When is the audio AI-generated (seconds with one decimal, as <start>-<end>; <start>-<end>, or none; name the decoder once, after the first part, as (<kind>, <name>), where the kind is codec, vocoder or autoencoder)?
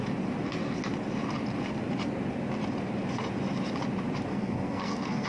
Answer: 4.3-5.3 (codec, SNAC)